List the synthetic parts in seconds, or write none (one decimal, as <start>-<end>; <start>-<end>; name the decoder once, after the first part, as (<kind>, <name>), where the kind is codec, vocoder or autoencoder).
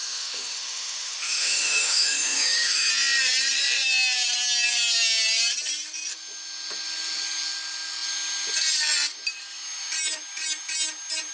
0.0-2.9 (autoencoder, DAC-VAE)